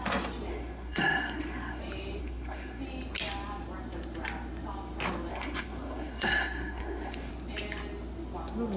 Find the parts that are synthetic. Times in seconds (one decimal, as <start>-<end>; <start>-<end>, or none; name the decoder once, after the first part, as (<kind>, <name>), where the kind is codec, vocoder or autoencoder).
0.5-1.8 (codec, SNAC); 2.2-2.8; 5.3-7.3